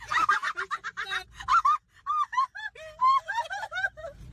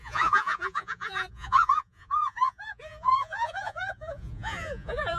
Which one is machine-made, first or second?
second